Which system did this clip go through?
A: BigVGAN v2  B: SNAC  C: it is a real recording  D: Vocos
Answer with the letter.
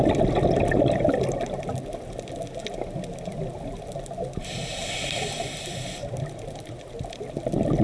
C